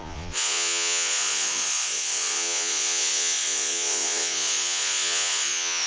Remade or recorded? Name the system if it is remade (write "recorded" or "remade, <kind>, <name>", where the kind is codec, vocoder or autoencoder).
remade, vocoder, Vocos